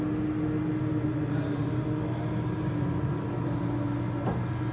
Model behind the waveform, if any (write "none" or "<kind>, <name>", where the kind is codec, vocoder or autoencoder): none